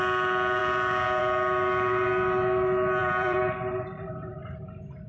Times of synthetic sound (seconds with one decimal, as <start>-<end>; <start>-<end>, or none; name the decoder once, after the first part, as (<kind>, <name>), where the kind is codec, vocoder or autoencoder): 3.0-5.1 (vocoder, BigVGAN v2)